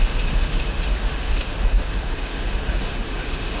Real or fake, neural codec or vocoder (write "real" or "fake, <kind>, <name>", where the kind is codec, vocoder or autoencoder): fake, autoencoder, DAC-VAE